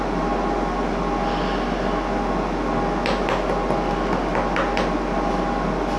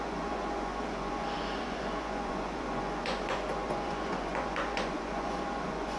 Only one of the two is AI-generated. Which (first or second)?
second